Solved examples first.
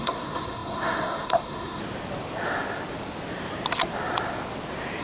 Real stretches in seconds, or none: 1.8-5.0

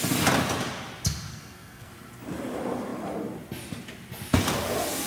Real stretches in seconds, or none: 0.0-1.3; 1.9-5.1

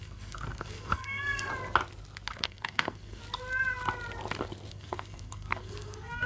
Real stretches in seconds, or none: 1.5-2.3; 3.2-4.7

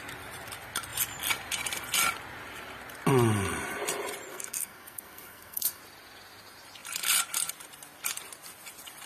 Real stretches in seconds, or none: 0.0-4.3; 5.8-9.1

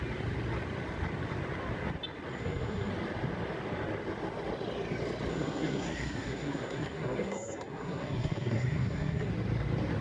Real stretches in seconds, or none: 0.0-2.3; 2.9-5.3; 9.3-10.0

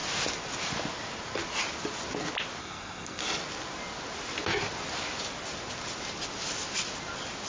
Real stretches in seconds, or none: 0.0-2.6; 3.2-7.5

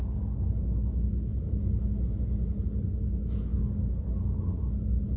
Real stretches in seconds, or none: 0.0-5.2